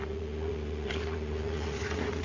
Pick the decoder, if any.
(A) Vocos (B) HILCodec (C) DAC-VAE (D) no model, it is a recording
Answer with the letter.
A